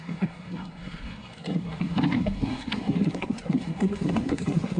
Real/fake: fake